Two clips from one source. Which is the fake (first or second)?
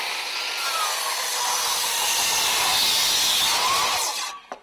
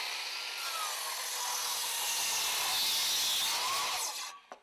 first